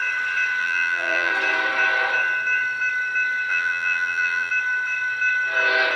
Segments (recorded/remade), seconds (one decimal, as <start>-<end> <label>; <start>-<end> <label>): 0.0-0.6 recorded; 0.6-1.3 remade; 1.3-3.5 recorded; 3.5-4.5 remade; 4.5-6.0 recorded